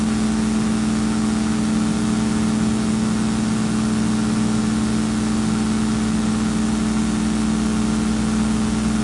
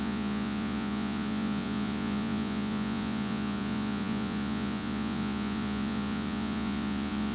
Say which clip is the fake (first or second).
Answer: second